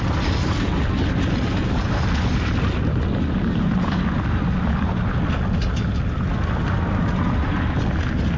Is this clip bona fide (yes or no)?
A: yes